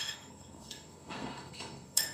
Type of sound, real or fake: fake